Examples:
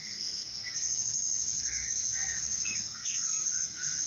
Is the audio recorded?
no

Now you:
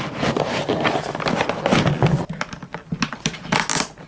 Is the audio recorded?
yes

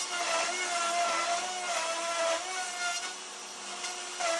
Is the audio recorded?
yes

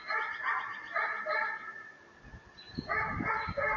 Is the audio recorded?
yes